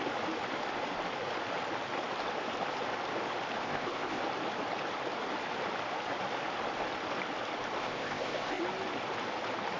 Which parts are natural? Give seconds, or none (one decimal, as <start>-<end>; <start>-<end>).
0.0-3.6; 4.2-7.8; 8.6-9.8